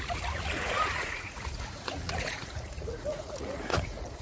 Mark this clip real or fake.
fake